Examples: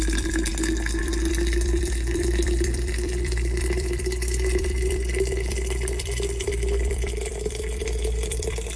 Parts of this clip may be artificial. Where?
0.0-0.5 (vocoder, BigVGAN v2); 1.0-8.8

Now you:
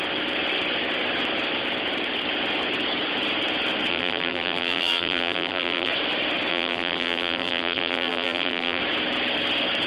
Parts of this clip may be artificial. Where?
3.9-5.9 (vocoder, BigVGAN v2); 6.5-8.8

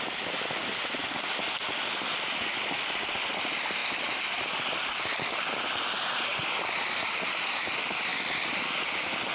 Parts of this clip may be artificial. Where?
none

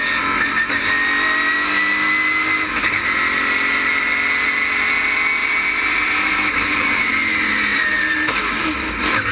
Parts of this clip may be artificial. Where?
5.4-7.1 (vocoder, BigVGAN v2)

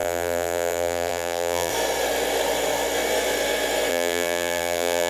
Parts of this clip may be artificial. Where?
0.0-1.7 (vocoder, BigVGAN v2); 3.9-5.1